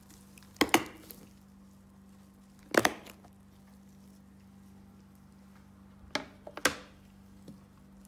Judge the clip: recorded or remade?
recorded